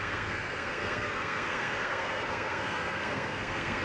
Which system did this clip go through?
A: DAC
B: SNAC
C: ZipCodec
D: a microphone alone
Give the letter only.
B